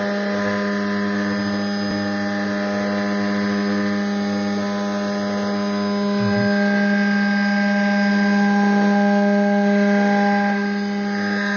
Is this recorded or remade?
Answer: recorded